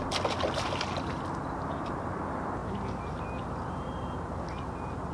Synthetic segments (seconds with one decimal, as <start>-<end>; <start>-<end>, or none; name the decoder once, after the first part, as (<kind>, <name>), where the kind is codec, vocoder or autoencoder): none